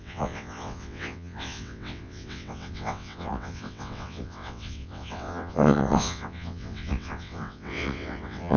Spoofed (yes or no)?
yes